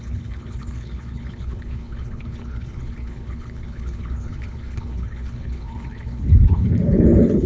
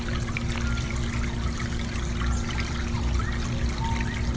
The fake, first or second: first